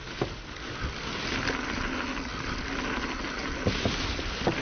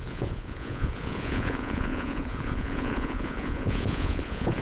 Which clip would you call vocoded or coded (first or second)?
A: second